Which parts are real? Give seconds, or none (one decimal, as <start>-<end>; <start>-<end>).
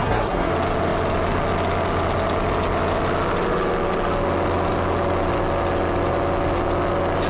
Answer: 0.5-7.3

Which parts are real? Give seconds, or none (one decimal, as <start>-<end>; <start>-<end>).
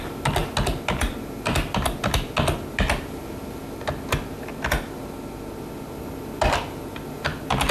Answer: 0.0-7.7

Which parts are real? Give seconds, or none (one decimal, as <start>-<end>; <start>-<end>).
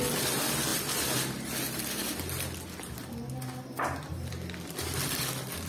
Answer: 0.0-5.7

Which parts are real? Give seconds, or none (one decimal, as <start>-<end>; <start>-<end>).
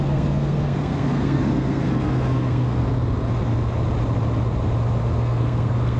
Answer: 2.8-5.2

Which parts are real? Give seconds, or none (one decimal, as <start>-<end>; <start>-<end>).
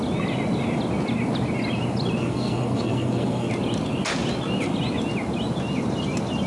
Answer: 0.0-2.2; 3.5-6.5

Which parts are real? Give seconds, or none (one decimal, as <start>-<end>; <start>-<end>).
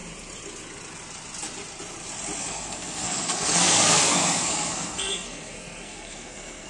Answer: 0.0-2.4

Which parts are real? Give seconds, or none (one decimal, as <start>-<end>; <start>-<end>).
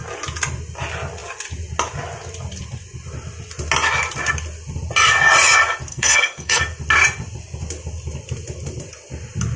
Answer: 0.0-5.9; 6.6-9.6